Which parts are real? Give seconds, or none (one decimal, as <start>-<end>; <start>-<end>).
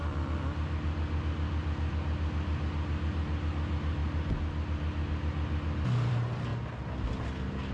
0.0-7.7